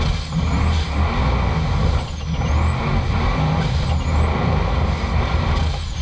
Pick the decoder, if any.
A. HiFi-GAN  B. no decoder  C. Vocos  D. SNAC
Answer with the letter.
B